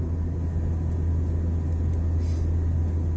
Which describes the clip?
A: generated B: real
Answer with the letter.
B